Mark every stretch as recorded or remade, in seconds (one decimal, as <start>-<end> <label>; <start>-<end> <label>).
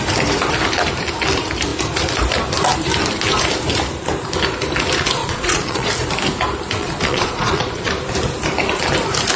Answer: 0.0-5.2 recorded; 5.2-5.9 remade; 5.9-6.8 recorded; 6.8-7.9 remade; 7.9-9.4 recorded